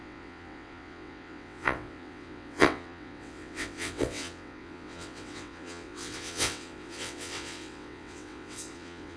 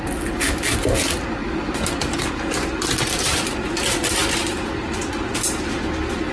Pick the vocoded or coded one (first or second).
first